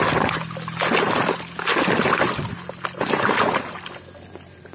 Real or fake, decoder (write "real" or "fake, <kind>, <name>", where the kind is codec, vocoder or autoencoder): real